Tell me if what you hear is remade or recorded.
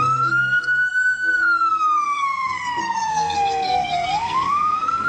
remade